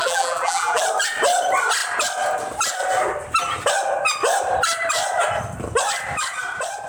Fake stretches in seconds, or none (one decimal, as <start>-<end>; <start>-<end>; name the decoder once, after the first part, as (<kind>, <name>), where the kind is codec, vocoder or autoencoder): 0.0-0.8 (vocoder, BigVGAN v2)